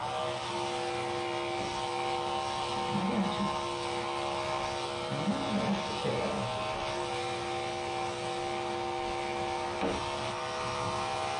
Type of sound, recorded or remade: recorded